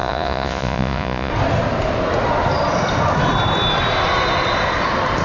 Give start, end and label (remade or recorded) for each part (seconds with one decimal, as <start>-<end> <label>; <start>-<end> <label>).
0.0-1.3 remade; 1.3-5.2 recorded